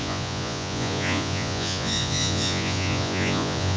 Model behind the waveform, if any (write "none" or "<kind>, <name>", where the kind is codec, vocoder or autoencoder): vocoder, Vocos